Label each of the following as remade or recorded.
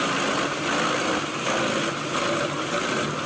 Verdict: recorded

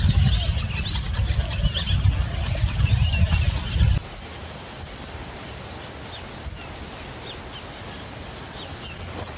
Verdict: recorded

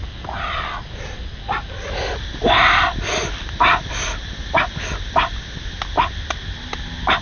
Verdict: recorded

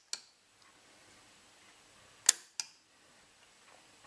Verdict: recorded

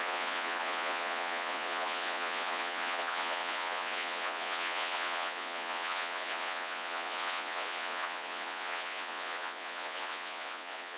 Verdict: remade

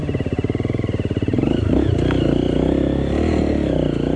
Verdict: recorded